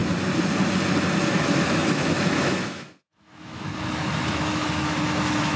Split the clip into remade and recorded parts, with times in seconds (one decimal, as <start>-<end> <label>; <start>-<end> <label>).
0.0-1.3 recorded; 1.3-3.7 remade; 3.7-4.3 recorded; 4.3-5.6 remade